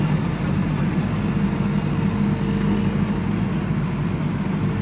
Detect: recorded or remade recorded